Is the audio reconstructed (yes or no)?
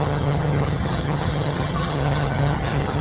yes